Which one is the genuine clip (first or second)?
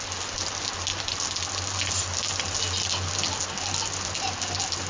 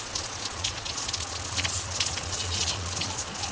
first